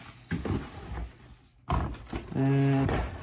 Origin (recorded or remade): recorded